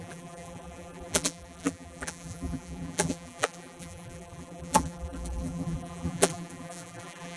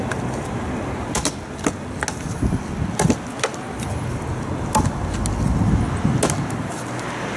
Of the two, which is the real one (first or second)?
second